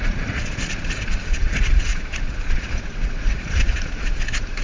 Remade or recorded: remade